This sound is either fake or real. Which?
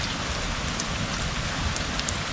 real